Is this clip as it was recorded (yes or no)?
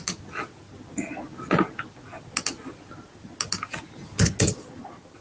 yes